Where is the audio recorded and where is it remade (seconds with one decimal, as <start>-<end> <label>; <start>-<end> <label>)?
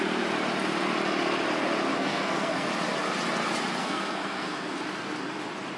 0.0-1.9 recorded; 1.9-2.7 remade; 2.7-3.8 recorded; 3.8-4.8 remade; 4.8-5.8 recorded